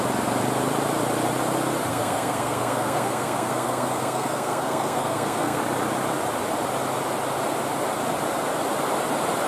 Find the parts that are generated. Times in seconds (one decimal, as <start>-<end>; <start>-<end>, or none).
1.9-5.6